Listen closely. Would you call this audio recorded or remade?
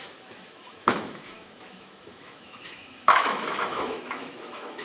remade